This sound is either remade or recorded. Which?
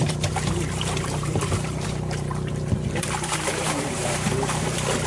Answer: remade